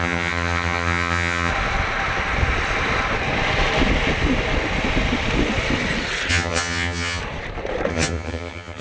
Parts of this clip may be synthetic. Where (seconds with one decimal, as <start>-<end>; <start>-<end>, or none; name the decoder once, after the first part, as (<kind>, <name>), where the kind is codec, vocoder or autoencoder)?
0.0-1.5 (vocoder, HiFi-GAN); 6.3-7.2; 7.9-8.8